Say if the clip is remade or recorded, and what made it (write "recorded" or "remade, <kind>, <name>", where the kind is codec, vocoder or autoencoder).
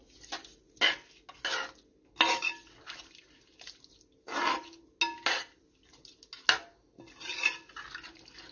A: recorded